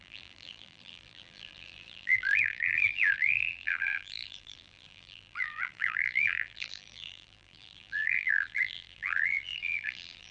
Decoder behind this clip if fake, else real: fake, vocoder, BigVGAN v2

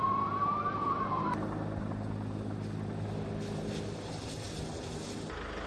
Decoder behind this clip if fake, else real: real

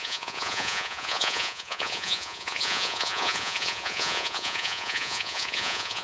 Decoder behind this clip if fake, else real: fake, vocoder, Vocos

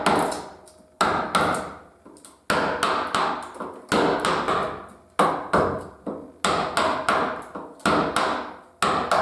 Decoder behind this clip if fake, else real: real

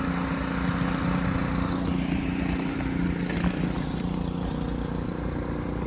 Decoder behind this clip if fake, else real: real